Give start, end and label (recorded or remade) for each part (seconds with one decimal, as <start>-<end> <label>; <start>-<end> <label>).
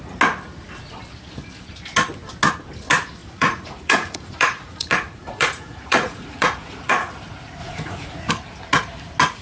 0.0-3.2 recorded; 3.2-7.1 remade; 7.1-7.6 recorded; 7.6-8.3 remade; 8.3-9.4 recorded